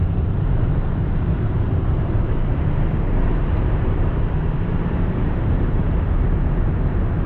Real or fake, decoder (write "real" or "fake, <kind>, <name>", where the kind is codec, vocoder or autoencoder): fake, vocoder, BigVGAN v2